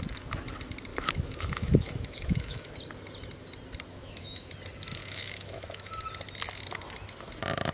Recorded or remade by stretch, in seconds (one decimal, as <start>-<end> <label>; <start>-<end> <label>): 0.0-0.9 recorded; 0.9-2.7 remade; 2.7-3.9 recorded; 3.9-4.5 remade; 4.5-5.0 recorded; 5.0-6.0 remade; 6.0-7.7 recorded